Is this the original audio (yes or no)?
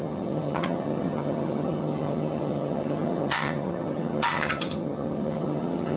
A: no